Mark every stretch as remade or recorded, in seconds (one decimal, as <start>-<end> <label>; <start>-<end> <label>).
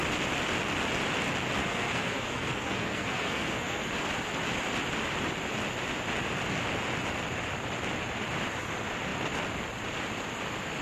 0.0-1.6 recorded; 1.6-3.9 remade; 3.9-10.8 recorded